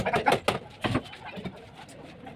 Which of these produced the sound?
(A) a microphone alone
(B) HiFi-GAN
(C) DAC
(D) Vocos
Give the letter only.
A